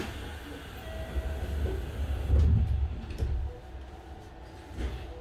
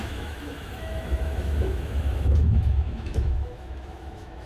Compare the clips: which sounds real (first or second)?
first